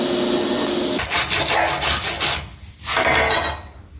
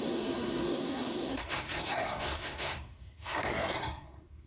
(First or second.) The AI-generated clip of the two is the second